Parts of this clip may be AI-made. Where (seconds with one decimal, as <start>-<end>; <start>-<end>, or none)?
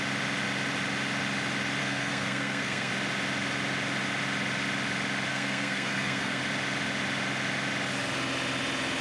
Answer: 1.8-2.9; 5.3-6.4